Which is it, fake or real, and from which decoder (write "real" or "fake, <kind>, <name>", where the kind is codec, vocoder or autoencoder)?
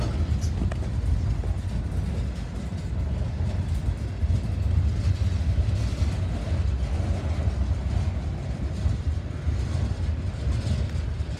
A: real